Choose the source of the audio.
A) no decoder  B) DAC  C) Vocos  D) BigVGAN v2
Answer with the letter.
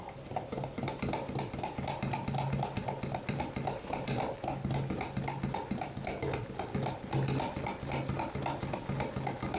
D